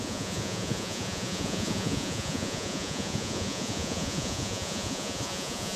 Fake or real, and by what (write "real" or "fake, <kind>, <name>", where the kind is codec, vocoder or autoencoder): fake, vocoder, Vocos